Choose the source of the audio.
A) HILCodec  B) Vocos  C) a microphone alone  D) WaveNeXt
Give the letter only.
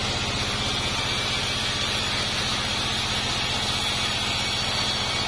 C